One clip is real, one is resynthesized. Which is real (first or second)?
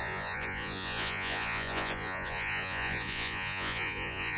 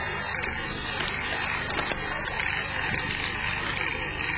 second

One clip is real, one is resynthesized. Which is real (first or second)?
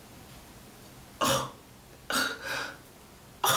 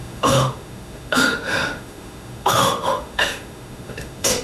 first